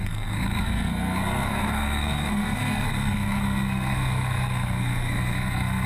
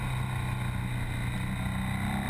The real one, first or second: second